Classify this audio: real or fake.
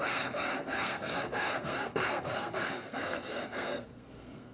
fake